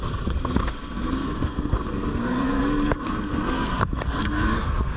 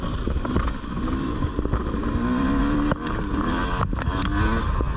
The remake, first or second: first